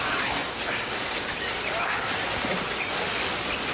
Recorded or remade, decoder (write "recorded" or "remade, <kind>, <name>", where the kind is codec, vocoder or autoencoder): recorded